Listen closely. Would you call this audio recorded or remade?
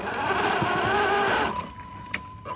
remade